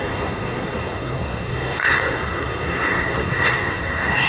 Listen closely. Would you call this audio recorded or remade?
remade